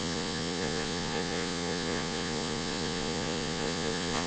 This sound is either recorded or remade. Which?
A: remade